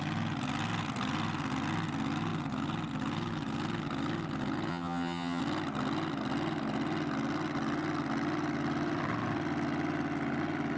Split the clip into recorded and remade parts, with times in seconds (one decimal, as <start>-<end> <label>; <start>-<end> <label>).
0.0-4.7 recorded; 4.7-5.4 remade; 5.4-10.8 recorded